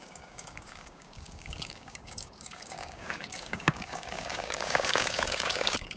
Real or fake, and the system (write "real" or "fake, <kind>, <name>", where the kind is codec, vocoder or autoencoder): fake, codec, DAC